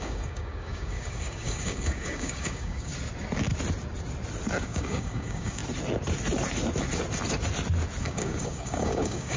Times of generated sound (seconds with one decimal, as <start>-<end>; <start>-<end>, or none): 0.0-2.9; 4.6-5.6; 8.0-9.4